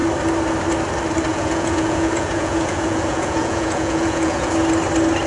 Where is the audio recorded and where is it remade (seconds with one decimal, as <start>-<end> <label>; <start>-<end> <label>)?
0.0-1.3 recorded; 1.3-4.5 remade; 4.5-5.3 recorded